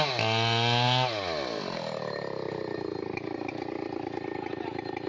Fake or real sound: real